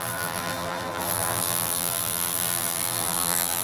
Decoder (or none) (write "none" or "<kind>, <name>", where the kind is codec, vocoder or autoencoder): vocoder, BigVGAN v2